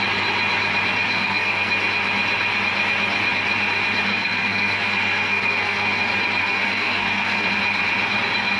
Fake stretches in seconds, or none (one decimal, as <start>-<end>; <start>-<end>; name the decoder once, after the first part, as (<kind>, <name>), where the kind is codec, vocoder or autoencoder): 1.1-1.7 (codec, SNAC); 4.1-6.0; 6.4-7.5